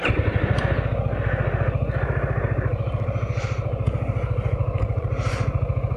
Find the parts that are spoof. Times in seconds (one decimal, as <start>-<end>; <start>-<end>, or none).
2.7-3.4; 4.6-5.3